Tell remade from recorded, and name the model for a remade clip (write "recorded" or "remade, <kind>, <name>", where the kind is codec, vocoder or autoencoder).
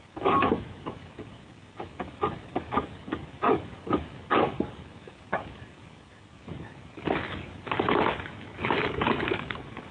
remade, codec, DAC